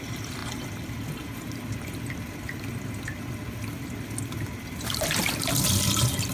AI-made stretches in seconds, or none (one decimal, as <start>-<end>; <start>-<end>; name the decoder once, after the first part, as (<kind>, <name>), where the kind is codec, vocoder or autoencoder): 0.0-0.4 (vocoder, BigVGAN v2); 4.2-6.3